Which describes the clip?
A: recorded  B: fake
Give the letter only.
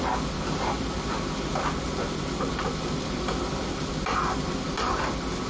A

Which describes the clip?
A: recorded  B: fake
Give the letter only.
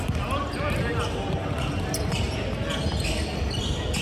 A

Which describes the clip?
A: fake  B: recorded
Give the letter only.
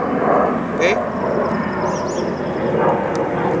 B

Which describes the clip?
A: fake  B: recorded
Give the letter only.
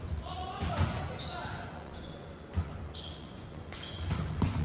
A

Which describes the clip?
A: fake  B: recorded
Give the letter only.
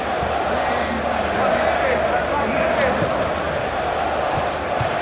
B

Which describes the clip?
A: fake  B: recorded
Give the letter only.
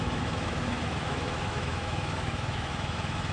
A